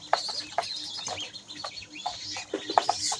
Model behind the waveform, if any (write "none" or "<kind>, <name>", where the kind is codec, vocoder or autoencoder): none